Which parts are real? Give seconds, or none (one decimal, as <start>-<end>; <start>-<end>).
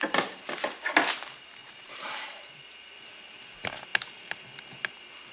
0.0-1.6; 2.4-5.3